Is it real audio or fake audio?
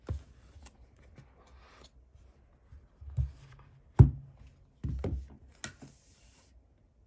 real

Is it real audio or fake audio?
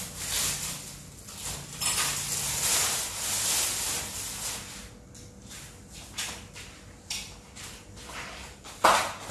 real